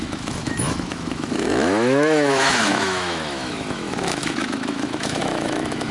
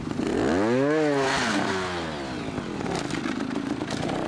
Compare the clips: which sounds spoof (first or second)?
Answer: first